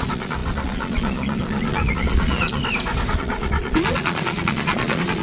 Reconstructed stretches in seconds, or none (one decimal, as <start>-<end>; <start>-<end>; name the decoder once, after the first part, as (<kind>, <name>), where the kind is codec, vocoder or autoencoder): 0.0-2.6 (vocoder, Vocos); 3.1-5.2